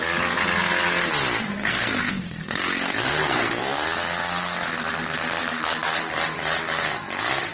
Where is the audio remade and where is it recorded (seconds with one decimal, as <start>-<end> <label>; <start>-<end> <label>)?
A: 0.0-1.6 recorded; 1.6-3.6 remade; 3.6-7.5 recorded